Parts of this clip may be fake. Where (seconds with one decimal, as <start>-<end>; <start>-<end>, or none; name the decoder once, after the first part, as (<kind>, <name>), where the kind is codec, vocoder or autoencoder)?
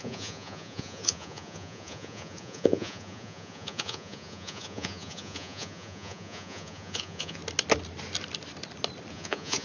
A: 0.0-7.4 (vocoder, Vocos); 9.1-9.6